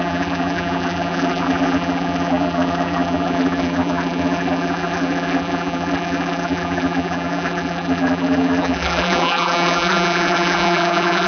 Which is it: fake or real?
fake